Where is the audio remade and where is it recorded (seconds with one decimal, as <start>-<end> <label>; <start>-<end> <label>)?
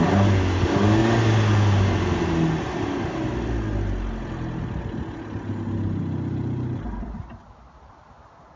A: 0.0-8.6 recorded